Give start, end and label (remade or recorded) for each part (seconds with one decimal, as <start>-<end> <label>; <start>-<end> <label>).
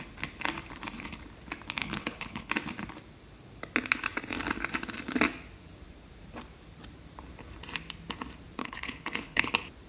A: 0.0-1.8 recorded; 1.8-2.5 remade; 2.5-8.6 recorded; 8.6-9.5 remade; 9.5-9.9 recorded